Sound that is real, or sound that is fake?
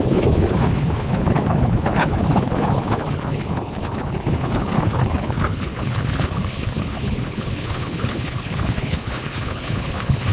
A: fake